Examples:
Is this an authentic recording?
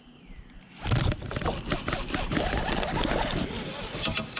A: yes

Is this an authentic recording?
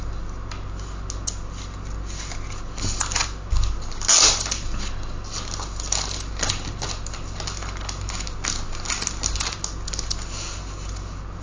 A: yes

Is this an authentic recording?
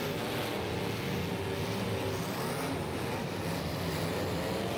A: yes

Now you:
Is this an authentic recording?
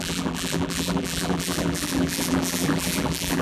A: no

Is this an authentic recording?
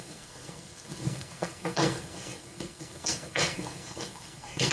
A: no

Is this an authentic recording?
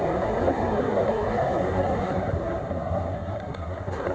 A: no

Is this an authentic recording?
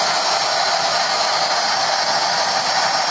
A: yes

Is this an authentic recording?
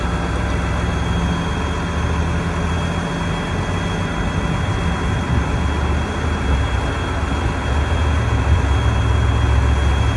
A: yes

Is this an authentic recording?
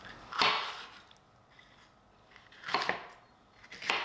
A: yes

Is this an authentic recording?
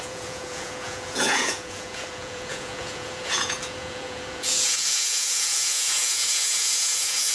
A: no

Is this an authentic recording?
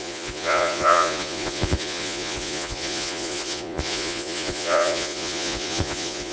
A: no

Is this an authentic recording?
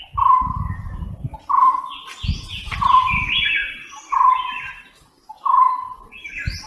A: yes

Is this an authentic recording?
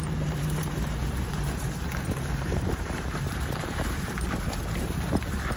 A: no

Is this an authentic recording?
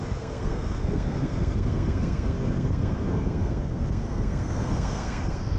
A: no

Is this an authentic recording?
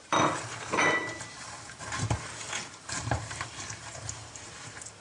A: no